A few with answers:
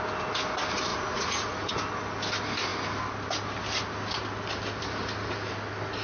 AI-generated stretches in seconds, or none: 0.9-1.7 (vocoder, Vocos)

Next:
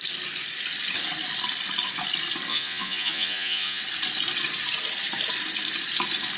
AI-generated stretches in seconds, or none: 2.5-3.8 (vocoder, Vocos)